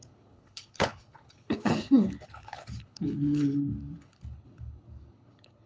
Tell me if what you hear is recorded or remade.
remade